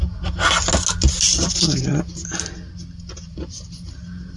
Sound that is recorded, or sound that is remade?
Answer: recorded